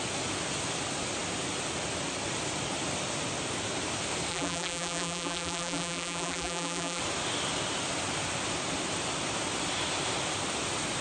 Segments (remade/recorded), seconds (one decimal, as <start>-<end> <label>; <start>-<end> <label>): 0.0-4.3 recorded; 4.3-7.0 remade; 7.0-11.0 recorded